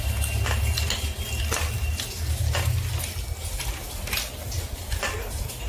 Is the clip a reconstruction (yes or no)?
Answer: no